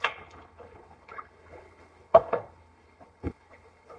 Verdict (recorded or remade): remade